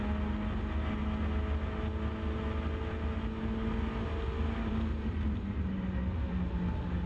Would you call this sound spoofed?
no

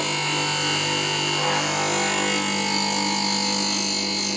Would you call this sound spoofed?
no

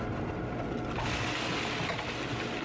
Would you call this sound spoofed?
no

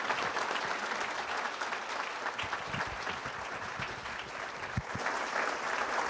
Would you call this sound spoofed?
no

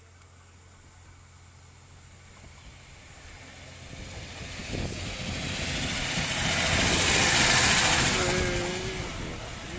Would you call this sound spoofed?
no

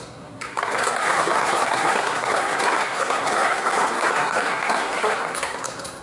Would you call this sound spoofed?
yes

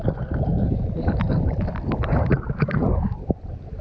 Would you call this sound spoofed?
no